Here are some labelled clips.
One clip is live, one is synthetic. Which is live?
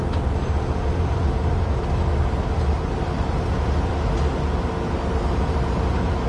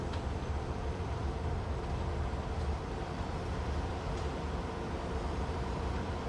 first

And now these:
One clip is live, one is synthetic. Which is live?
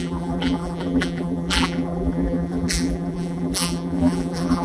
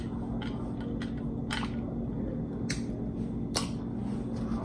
second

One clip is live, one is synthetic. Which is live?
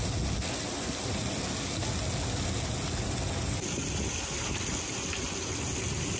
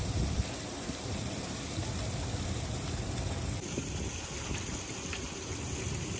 first